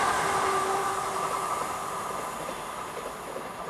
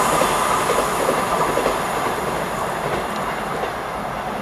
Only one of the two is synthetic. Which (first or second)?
first